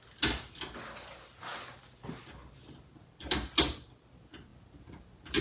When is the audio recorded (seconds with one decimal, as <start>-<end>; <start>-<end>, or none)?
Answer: 0.0-5.4